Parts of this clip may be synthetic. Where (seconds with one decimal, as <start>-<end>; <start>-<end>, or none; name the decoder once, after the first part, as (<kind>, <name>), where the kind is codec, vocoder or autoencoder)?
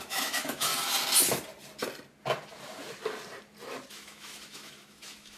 0.0-0.7 (autoencoder, DAC-VAE); 3.9-5.4